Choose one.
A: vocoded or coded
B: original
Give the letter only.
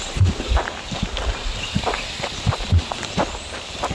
A